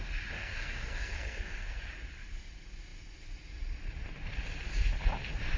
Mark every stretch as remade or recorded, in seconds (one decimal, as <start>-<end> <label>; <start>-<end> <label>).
0.0-0.4 recorded; 0.4-1.8 remade; 1.8-5.6 recorded